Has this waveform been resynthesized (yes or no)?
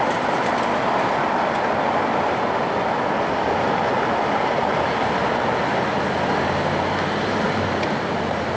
no